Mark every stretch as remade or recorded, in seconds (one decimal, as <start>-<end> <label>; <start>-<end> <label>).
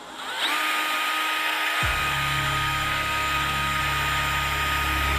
0.0-1.4 recorded; 1.4-3.8 remade; 3.8-5.2 recorded